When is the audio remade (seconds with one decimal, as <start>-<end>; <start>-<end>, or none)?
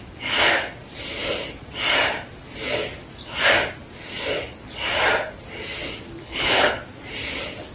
6.2-6.8